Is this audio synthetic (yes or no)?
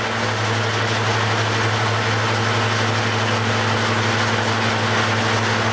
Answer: no